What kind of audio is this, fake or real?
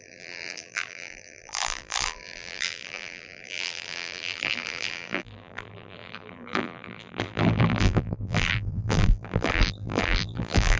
fake